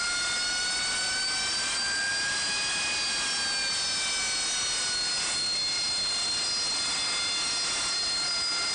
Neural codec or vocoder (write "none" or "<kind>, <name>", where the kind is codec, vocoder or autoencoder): none